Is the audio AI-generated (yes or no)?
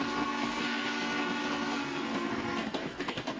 yes